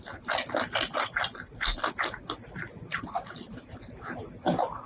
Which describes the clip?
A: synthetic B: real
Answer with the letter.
B